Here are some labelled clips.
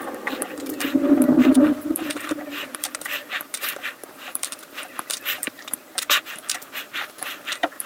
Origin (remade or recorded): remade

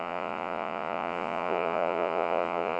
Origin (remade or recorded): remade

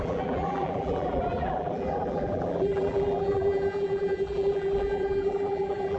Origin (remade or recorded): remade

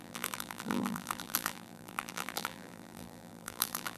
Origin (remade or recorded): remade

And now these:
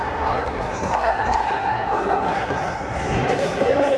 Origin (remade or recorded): remade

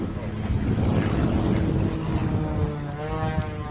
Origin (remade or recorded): recorded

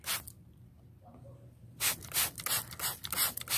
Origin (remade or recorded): recorded